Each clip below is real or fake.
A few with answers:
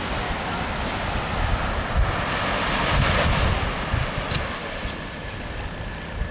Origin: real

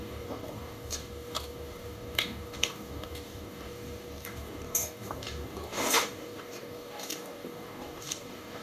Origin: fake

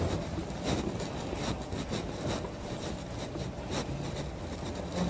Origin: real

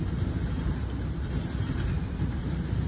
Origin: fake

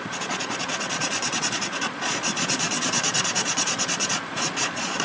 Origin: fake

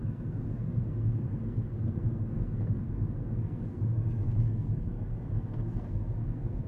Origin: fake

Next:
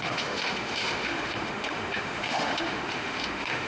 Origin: fake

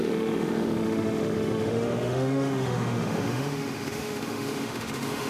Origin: fake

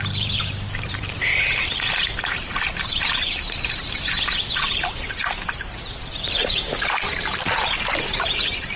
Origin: fake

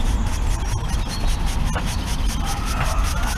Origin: real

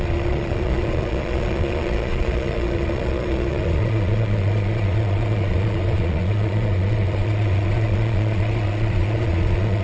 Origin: fake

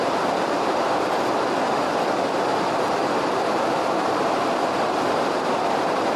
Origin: fake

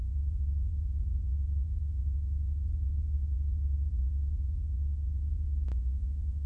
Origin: fake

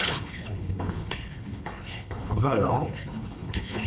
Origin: fake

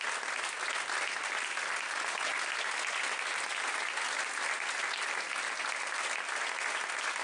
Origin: real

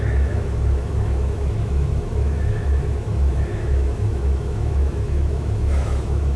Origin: fake